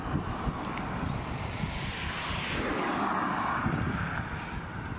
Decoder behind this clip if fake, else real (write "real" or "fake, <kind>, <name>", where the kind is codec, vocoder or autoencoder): real